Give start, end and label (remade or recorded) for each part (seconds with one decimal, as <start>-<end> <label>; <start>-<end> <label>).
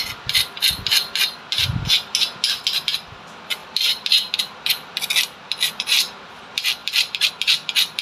0.0-6.8 recorded; 6.8-7.3 remade; 7.3-8.0 recorded